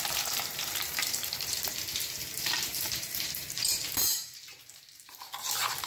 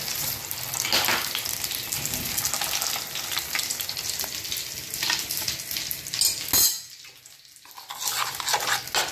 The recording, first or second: second